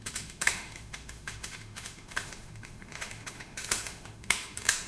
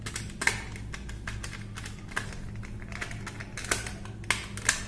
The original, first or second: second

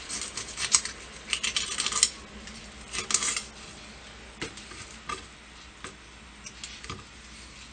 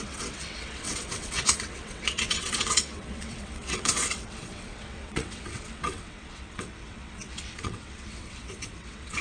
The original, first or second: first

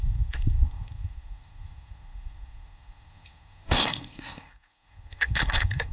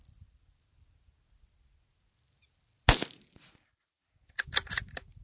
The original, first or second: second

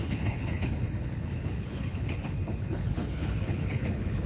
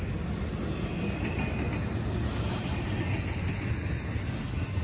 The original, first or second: second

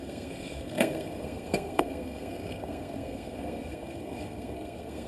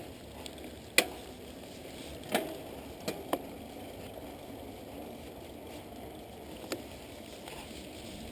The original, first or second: second